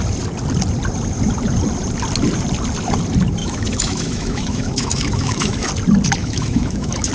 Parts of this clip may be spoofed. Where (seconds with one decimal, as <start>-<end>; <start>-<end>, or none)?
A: 3.4-5.7; 6.2-7.1